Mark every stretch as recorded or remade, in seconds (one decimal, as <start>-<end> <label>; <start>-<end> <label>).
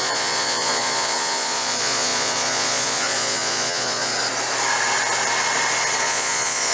0.0-4.1 remade; 4.1-6.0 recorded; 6.0-6.7 remade